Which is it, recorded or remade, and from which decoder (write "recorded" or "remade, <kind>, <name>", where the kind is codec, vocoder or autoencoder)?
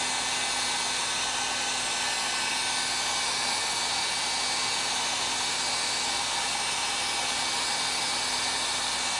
recorded